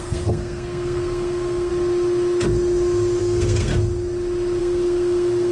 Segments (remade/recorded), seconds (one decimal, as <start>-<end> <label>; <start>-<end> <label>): 0.0-1.7 remade; 1.7-3.2 recorded; 3.2-3.7 remade; 3.7-4.6 recorded; 4.6-5.5 remade